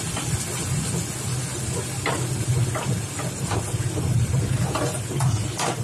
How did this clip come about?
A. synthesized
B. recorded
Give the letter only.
B